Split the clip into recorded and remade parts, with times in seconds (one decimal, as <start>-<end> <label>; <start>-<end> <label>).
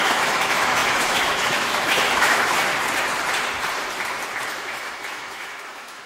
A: 0.0-2.7 remade; 2.7-4.5 recorded; 4.5-6.1 remade